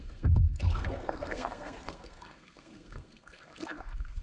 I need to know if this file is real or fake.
fake